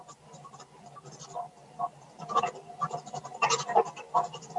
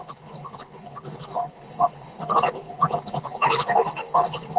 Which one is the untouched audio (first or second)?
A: first